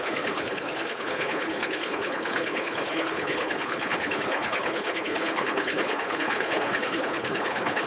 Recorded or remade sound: remade